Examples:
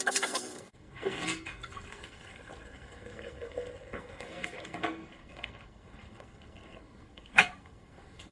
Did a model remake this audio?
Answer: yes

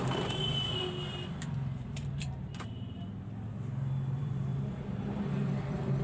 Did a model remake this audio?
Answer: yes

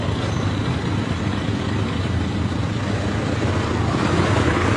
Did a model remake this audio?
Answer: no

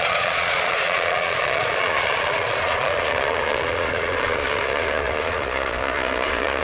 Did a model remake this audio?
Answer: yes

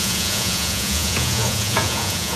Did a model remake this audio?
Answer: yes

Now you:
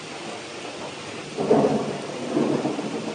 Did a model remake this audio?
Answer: no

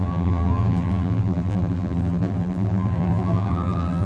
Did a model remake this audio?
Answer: yes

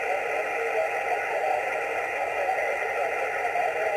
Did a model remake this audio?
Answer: no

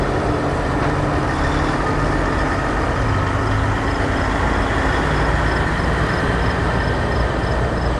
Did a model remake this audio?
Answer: no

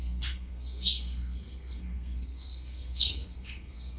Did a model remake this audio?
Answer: yes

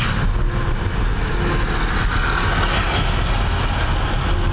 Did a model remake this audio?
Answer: no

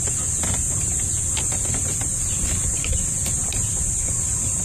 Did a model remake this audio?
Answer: no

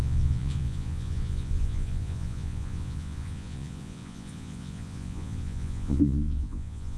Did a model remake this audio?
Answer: yes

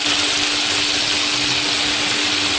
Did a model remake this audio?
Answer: no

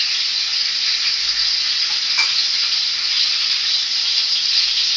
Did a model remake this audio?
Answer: no